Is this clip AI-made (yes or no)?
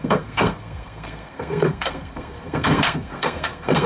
yes